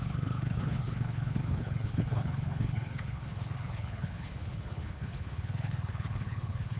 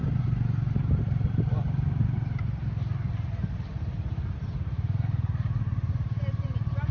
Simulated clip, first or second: first